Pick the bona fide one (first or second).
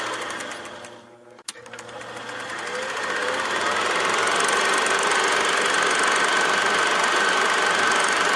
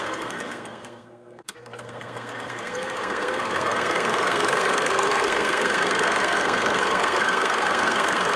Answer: first